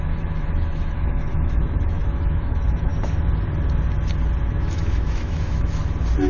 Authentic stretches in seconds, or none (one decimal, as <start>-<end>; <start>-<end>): 2.9-4.4; 5.8-6.3